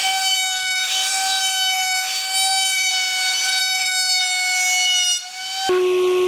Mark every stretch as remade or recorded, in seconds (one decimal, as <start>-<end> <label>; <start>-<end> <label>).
0.0-2.9 remade; 2.9-3.6 recorded; 3.6-4.2 remade; 4.2-6.3 recorded